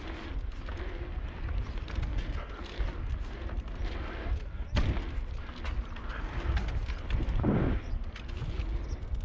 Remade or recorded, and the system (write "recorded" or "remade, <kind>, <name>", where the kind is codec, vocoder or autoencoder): recorded